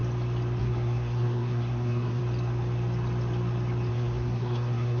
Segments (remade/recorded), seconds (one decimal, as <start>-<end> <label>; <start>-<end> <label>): 0.0-0.6 recorded; 0.6-2.2 remade; 2.2-3.9 recorded; 3.9-5.0 remade